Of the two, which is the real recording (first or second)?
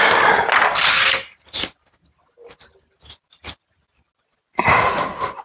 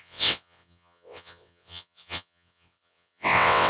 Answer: first